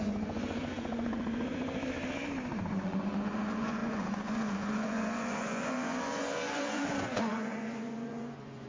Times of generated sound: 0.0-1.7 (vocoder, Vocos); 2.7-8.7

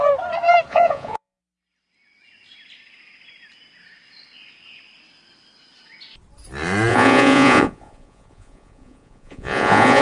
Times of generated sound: 0.7-1.4 (vocoder, Vocos); 6.9-10.0